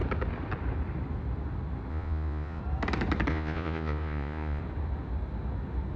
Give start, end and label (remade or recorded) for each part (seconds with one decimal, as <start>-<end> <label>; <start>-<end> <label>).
0.0-1.9 recorded; 1.9-2.6 remade; 2.6-3.3 recorded; 3.3-4.6 remade; 4.6-6.0 recorded